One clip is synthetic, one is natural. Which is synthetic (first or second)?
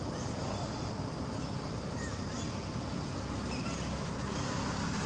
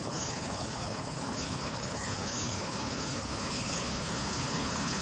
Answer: second